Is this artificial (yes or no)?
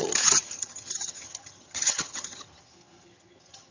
yes